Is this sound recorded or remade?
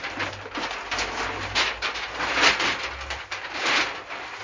recorded